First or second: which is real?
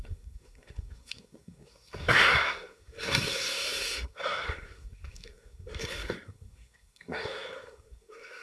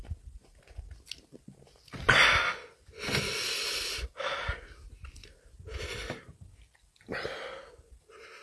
second